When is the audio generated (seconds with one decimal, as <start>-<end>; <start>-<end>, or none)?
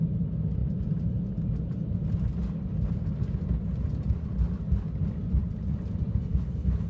none